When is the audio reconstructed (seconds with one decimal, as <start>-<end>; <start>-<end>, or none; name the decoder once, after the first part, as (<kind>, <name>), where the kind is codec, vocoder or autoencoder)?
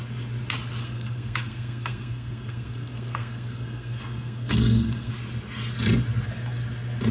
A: 0.8-5.1 (codec, SNAC)